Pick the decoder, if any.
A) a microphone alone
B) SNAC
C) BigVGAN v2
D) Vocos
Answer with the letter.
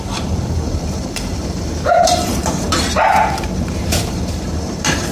C